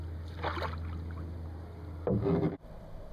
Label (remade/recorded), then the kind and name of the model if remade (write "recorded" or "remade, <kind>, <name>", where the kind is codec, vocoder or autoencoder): recorded